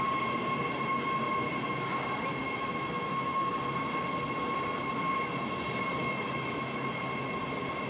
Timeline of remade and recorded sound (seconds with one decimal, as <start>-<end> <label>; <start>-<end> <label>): 0.0-2.4 recorded; 2.4-3.5 remade; 3.5-6.0 recorded; 6.0-7.0 remade; 7.0-7.9 recorded